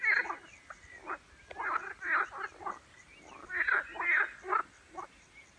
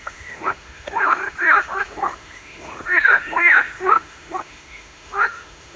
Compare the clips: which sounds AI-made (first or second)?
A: second